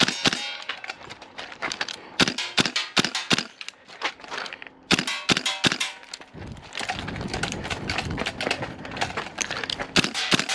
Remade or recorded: recorded